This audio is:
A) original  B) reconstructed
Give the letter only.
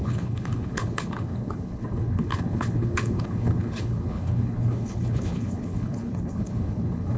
B